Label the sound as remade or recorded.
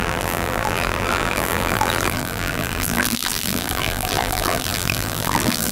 remade